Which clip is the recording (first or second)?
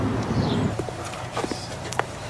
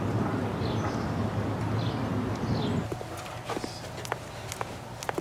second